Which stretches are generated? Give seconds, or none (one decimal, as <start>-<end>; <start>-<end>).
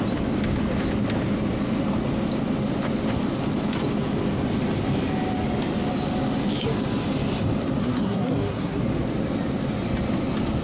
7.8-8.8